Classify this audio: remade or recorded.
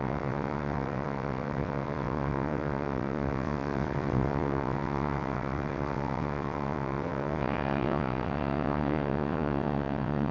remade